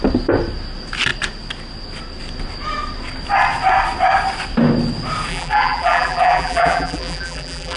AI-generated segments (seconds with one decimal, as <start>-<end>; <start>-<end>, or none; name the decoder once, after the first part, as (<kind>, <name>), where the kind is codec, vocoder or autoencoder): 5.3-7.8 (vocoder, BigVGAN v2)